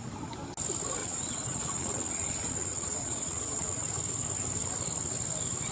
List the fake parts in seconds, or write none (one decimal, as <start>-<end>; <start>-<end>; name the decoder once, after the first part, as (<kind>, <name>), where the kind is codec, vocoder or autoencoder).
1.0-3.8 (vocoder, Vocos)